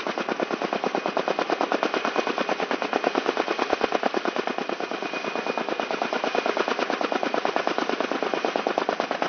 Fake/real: real